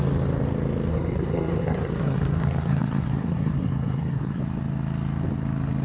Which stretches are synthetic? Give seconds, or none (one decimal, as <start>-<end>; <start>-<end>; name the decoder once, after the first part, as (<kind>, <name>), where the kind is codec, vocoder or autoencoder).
0.9-4.4 (codec, SNAC)